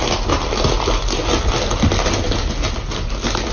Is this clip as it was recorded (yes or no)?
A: yes